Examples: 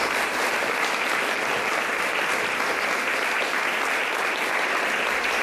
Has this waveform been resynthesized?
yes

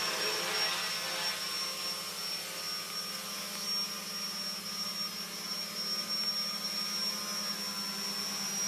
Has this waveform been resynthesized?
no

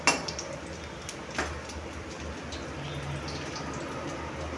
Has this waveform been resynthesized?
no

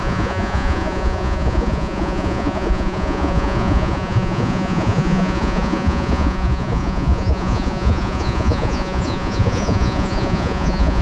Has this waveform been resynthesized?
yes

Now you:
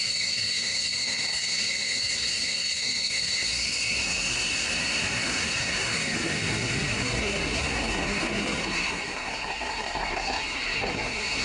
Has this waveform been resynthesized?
yes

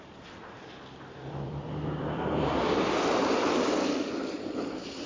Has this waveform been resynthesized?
yes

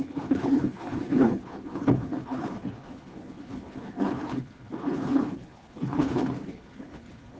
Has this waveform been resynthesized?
yes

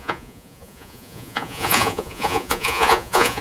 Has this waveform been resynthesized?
yes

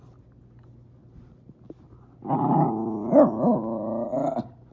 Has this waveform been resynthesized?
no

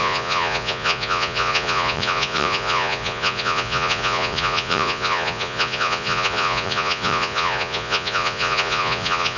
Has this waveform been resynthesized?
yes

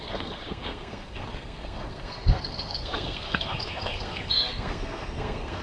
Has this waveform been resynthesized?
yes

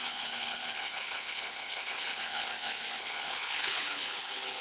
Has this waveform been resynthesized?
yes